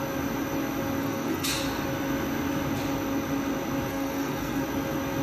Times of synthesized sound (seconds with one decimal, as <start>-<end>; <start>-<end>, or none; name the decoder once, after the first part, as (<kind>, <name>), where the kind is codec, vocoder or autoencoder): 1.0-1.6 (codec, SNAC); 3.9-4.6